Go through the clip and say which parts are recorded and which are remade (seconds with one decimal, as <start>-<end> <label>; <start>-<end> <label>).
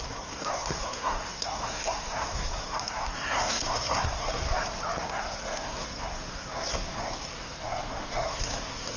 0.0-4.4 remade; 4.4-5.0 recorded; 5.0-9.0 remade